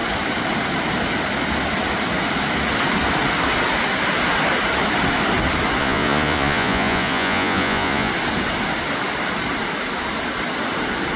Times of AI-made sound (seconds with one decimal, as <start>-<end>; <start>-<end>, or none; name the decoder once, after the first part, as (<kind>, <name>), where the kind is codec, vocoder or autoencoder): 5.8-8.1 (vocoder, Vocos)